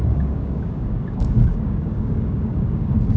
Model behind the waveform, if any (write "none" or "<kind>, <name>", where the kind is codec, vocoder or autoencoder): codec, DAC